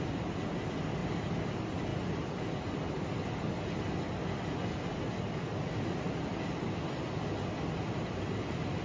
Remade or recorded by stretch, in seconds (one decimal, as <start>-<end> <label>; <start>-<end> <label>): 0.0-8.8 recorded

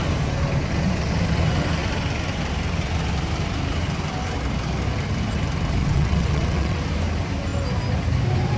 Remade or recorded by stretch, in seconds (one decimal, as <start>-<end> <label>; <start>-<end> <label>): 0.0-5.8 recorded; 5.8-6.8 remade; 6.8-8.6 recorded

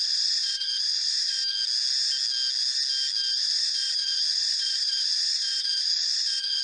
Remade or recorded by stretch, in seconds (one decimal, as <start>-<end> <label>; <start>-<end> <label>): 0.0-1.4 remade; 1.4-3.4 recorded; 3.4-6.6 remade

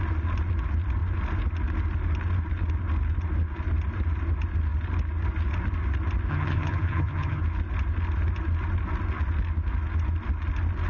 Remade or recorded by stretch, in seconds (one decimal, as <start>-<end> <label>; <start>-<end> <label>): 0.0-6.3 recorded; 6.3-7.4 remade; 7.4-10.9 recorded